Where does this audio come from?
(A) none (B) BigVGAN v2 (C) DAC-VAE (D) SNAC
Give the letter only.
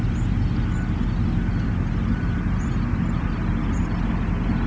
A